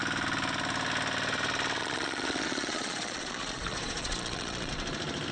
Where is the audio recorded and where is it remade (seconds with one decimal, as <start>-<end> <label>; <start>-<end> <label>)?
0.0-1.8 recorded; 1.8-4.7 remade; 4.7-5.3 recorded